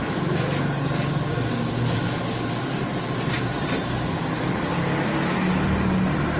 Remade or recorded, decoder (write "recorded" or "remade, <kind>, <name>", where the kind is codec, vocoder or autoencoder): recorded